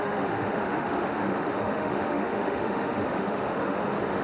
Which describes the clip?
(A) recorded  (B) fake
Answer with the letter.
B